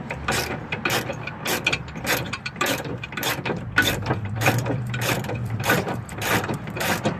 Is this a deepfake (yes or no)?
yes